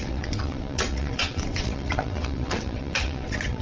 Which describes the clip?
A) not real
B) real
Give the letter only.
A